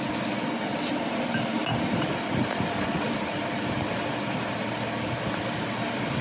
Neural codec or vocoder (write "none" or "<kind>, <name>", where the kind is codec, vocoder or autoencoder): none